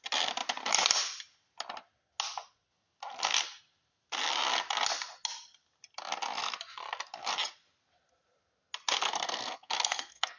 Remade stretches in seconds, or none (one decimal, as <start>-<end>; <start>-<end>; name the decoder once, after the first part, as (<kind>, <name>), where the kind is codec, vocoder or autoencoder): 9.0-10.4 (codec, SNAC)